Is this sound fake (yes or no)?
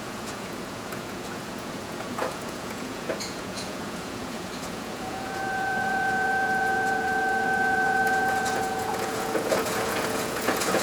yes